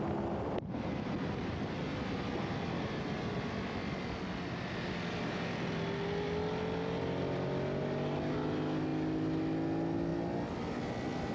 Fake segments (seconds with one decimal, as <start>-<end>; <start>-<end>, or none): none